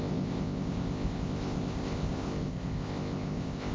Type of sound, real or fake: fake